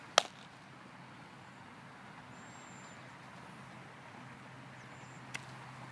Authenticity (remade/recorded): recorded